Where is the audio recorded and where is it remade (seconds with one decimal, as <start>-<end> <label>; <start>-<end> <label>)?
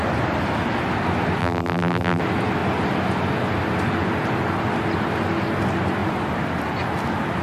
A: 0.0-1.4 recorded; 1.4-2.2 remade; 2.2-7.4 recorded